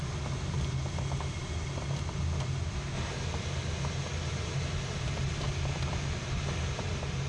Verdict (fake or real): real